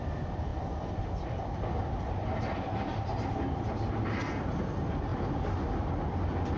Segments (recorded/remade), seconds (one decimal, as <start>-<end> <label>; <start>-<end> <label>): 0.0-6.6 recorded